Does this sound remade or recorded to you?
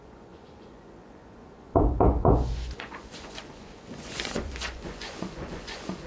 remade